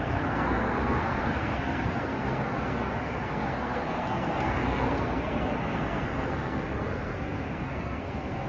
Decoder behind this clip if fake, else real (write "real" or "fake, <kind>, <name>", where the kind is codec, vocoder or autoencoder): fake, codec, SNAC